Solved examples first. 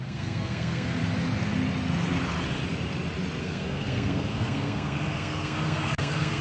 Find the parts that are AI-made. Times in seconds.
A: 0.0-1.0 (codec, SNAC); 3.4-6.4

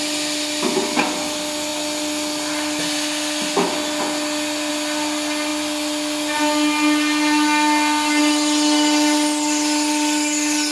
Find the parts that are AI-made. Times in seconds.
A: none

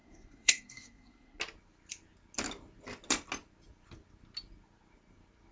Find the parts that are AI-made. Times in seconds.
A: 0.0-1.4 (codec, SNAC)